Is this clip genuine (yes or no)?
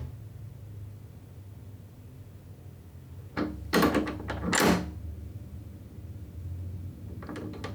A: yes